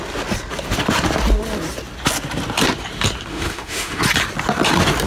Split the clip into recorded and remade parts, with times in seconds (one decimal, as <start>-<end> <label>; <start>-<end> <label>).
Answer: 0.0-3.3 recorded; 3.3-4.0 remade; 4.0-5.1 recorded